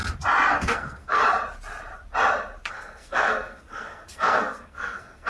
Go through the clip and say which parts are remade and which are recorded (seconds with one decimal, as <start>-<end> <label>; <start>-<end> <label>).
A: 0.0-0.5 recorded; 0.5-1.2 remade; 1.2-2.7 recorded; 2.7-5.3 remade